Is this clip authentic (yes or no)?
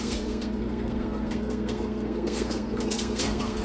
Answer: no